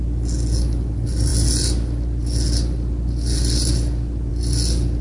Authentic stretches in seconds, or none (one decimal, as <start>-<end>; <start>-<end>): 0.0-5.0